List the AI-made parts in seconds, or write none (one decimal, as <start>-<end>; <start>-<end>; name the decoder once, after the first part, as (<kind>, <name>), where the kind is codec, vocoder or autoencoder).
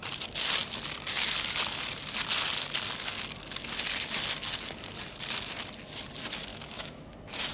6.5-7.1 (autoencoder, DAC-VAE)